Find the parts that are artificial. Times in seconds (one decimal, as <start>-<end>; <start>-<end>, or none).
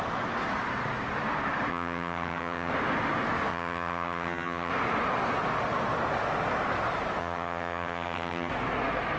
1.7-2.7; 3.5-4.7; 7.2-8.5